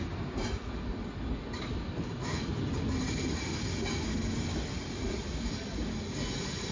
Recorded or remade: recorded